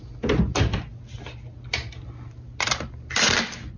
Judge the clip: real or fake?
real